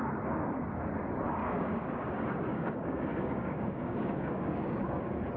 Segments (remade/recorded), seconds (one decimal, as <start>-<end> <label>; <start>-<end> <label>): 0.0-1.4 recorded; 1.4-2.1 remade; 2.1-2.5 recorded; 2.5-5.0 remade; 5.0-5.4 recorded

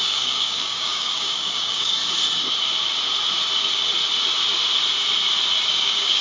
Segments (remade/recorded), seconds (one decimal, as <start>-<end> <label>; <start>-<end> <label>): 0.0-2.0 remade; 2.0-5.7 recorded; 5.7-6.2 remade

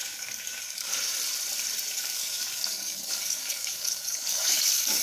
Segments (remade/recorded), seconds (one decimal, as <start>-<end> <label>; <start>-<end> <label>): 0.0-0.9 remade; 0.9-1.9 recorded; 1.9-5.0 remade

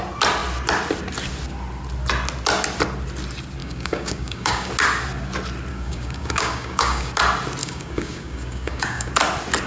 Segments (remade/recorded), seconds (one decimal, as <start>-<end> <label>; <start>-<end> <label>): 0.0-3.6 recorded; 3.6-4.7 remade; 4.7-5.7 recorded; 5.7-7.1 remade; 7.1-7.6 recorded; 7.6-9.1 remade; 9.1-9.7 recorded

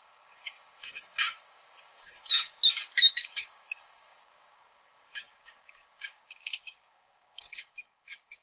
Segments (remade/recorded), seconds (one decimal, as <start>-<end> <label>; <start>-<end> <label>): 0.0-2.6 remade; 2.6-3.1 recorded; 3.1-8.4 remade